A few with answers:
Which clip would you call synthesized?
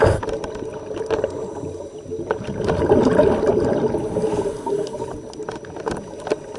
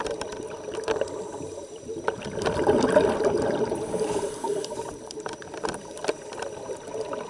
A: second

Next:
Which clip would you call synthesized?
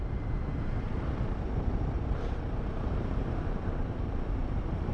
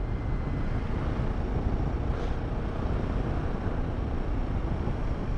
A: first